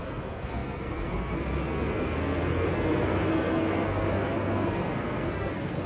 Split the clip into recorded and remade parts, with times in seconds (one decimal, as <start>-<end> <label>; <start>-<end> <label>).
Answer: 0.0-5.9 remade